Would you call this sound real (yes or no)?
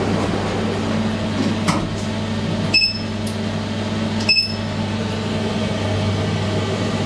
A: yes